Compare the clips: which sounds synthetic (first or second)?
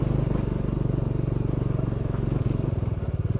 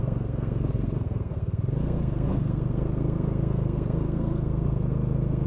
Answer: second